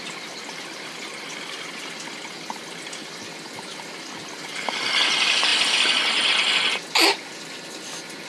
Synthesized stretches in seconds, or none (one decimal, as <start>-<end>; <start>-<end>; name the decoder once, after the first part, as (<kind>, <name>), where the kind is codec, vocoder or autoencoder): 5.5-6.1 (vocoder, BigVGAN v2)